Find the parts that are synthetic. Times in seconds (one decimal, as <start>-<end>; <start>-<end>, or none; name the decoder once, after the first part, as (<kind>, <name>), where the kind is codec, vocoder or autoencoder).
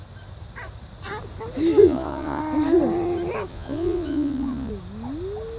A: 1.8-2.4 (vocoder, Vocos); 3.5-4.7